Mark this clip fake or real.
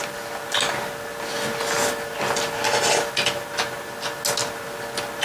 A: real